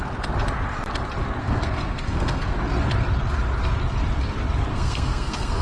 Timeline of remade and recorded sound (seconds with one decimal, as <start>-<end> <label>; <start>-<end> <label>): 0.0-1.4 recorded; 1.4-2.6 remade; 2.6-4.7 recorded; 4.7-5.6 remade